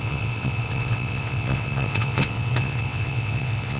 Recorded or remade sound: remade